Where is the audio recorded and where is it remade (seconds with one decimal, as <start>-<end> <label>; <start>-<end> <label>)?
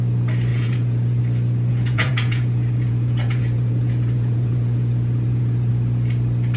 0.0-0.5 recorded; 0.5-1.2 remade; 1.2-1.7 recorded; 1.7-5.7 remade; 5.7-6.6 recorded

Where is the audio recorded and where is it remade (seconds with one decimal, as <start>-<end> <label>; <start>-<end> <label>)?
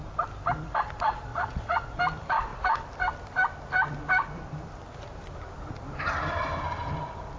0.0-1.3 recorded; 1.3-2.0 remade; 2.0-7.4 recorded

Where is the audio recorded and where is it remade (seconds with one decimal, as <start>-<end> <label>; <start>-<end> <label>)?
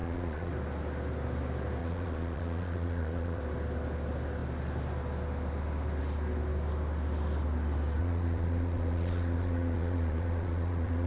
0.0-0.5 remade; 0.5-1.8 recorded; 1.8-3.4 remade; 3.4-8.0 recorded; 8.0-11.1 remade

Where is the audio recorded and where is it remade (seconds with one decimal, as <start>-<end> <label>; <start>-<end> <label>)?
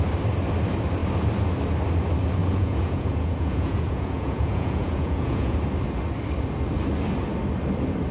0.0-2.4 recorded; 2.4-5.6 remade; 5.6-8.1 recorded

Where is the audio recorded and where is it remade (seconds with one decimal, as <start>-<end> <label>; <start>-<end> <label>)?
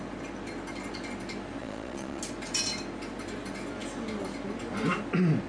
0.0-1.6 recorded; 1.6-2.2 remade; 2.2-5.5 recorded